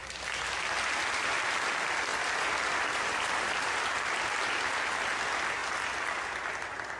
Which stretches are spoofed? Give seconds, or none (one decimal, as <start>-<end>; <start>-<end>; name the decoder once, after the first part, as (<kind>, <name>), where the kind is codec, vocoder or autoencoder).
2.1-3.9 (vocoder, BigVGAN v2)